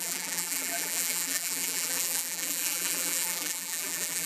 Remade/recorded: remade